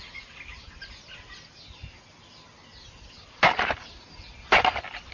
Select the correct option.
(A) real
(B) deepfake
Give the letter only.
A